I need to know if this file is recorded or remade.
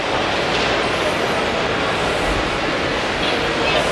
recorded